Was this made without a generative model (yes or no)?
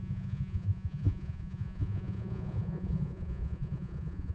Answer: no